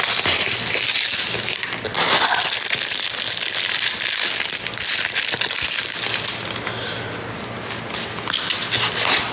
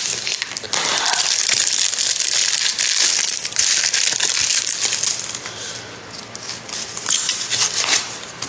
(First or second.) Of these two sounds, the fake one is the second